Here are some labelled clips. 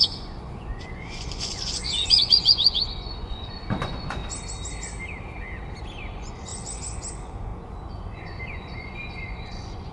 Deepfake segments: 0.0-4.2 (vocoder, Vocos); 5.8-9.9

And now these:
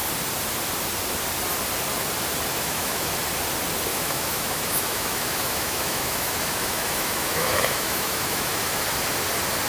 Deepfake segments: 2.5-3.1 (autoencoder, DAC-VAE); 3.9-8.8

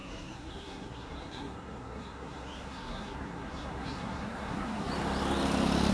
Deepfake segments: 0.0-4.9 (codec, SNAC)

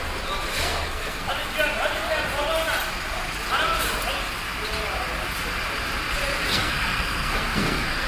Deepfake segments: 0.5-1.3 (codec, SNAC); 6.5-8.1

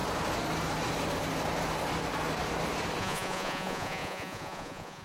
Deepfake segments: 3.0-5.0 (vocoder, Vocos)